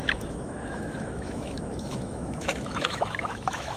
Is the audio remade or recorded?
remade